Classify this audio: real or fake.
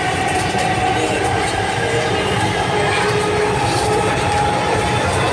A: real